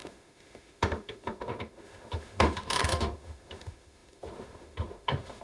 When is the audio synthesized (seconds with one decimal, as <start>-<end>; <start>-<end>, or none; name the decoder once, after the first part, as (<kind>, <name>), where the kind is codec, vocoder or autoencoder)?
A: 0.0-5.4 (autoencoder, DAC-VAE)